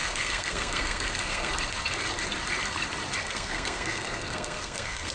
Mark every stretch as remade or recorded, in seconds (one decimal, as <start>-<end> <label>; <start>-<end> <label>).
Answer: 0.0-1.5 remade; 1.5-3.2 recorded; 3.2-5.1 remade